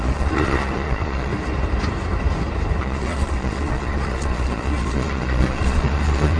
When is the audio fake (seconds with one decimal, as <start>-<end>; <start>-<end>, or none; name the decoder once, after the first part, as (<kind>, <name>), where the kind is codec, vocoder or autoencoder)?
0.0-1.3 (vocoder, Vocos); 2.8-6.4